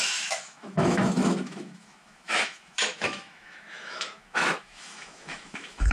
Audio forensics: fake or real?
fake